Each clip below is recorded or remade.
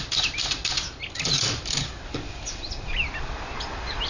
recorded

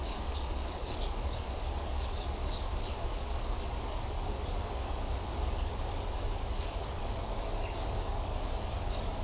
remade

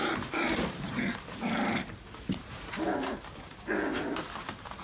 remade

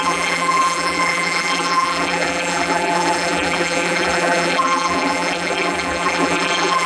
remade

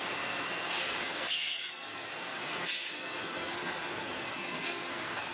remade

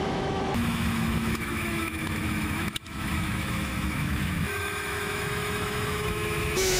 remade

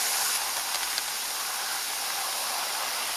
recorded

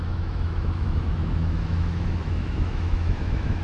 remade